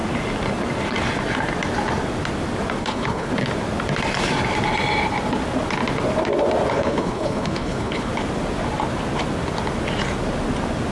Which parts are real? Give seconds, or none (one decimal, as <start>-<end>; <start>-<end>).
0.0-2.8; 3.3-6.7; 8.1-10.9